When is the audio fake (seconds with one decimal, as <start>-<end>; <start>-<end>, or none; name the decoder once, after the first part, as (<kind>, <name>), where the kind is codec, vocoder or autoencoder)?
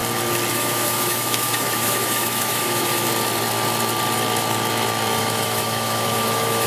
0.5-3.1 (autoencoder, DAC-VAE); 5.2-6.7